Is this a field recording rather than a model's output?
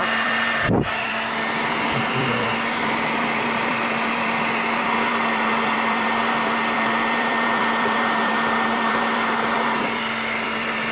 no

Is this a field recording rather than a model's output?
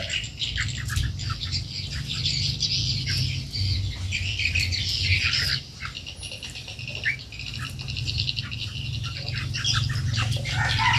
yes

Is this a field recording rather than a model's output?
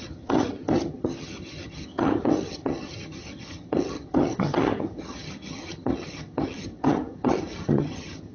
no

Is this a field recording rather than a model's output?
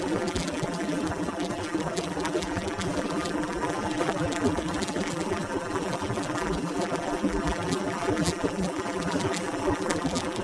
no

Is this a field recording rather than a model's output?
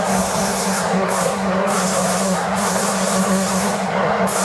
no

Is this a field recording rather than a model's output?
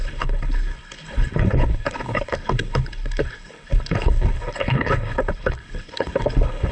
no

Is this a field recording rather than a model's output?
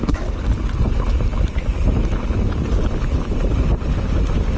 yes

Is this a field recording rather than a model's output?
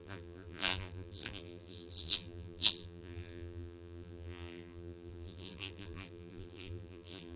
no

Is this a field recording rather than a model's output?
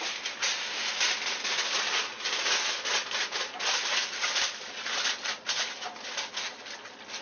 yes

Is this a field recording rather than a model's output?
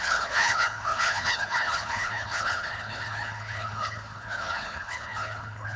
no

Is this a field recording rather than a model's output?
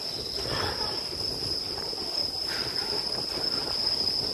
yes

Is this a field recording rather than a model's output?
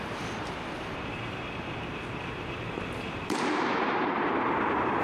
no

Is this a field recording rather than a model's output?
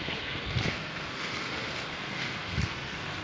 no